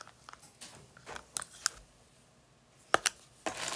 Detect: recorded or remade recorded